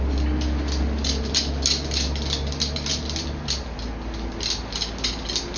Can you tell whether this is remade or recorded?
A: recorded